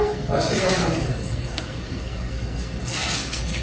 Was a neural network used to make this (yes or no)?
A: yes